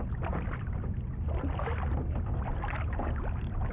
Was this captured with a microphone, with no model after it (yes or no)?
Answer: yes